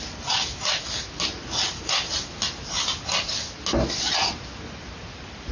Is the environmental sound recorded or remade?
recorded